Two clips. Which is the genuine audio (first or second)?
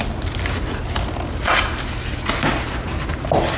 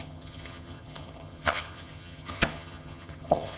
first